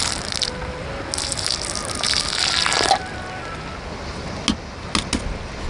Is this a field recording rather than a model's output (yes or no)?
yes